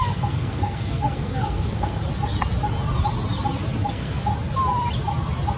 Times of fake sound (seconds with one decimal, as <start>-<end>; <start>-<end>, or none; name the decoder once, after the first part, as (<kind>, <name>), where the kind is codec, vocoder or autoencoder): 0.0-2.0 (codec, SNAC); 3.9-4.3